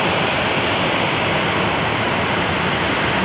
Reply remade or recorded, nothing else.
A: recorded